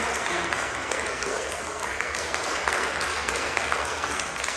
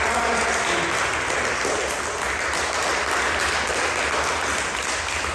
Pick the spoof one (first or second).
first